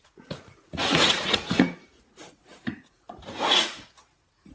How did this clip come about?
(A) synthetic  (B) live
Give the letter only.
A